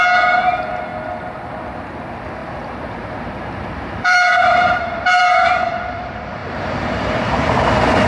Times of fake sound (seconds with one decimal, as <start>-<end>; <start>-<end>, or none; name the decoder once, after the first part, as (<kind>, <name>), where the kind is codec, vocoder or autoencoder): 2.4-5.7 (vocoder, BigVGAN v2); 6.4-7.4